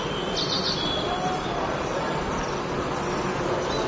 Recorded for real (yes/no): yes